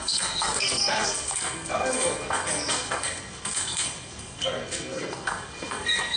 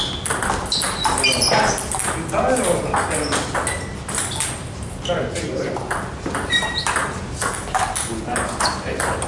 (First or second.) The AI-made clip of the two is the first